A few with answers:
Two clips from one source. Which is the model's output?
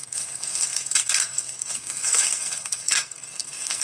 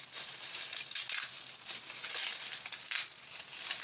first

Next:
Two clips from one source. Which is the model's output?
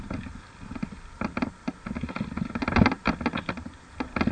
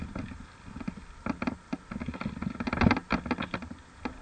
first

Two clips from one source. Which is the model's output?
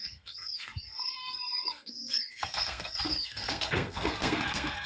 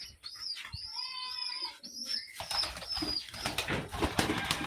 first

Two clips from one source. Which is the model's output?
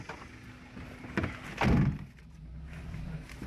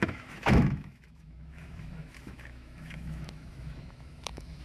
second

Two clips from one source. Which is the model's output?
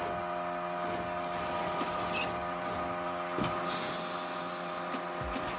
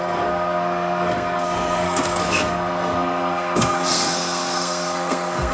second